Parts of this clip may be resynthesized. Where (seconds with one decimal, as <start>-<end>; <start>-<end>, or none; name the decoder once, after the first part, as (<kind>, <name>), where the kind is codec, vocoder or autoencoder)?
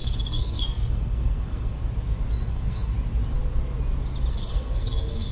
0.0-1.8 (codec, SNAC); 2.5-2.9; 4.3-5.3